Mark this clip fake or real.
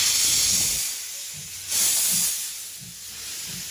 real